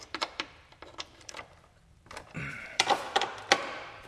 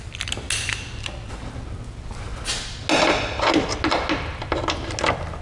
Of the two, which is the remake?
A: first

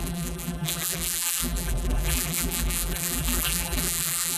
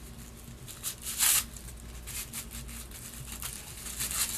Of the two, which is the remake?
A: first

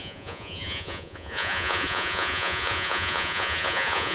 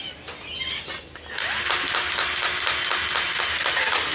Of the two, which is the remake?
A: first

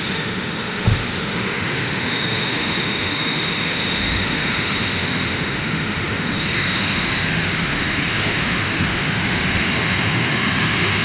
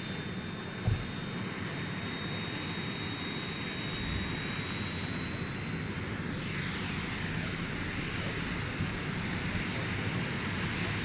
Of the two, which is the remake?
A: first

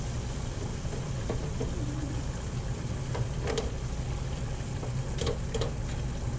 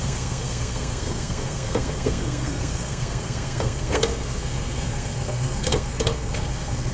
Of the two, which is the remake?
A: second